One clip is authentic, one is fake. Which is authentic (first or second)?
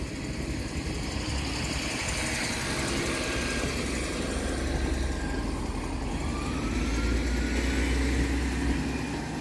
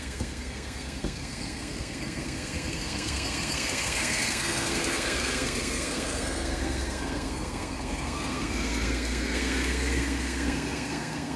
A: first